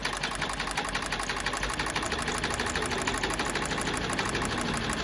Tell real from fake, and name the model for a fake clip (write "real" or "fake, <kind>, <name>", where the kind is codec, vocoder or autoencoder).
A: real